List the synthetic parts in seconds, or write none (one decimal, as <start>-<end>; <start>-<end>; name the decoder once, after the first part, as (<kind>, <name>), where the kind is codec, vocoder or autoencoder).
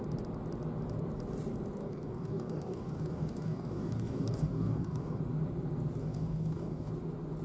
1.8-5.2 (codec, DAC); 6.0-6.9